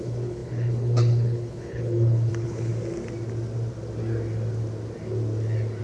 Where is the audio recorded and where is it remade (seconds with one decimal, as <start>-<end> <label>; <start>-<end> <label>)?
0.0-2.7 remade; 2.7-5.8 recorded